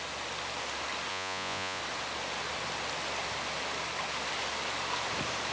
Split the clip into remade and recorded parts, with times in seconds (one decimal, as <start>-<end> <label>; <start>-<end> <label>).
0.0-1.1 recorded; 1.1-1.8 remade; 1.8-5.5 recorded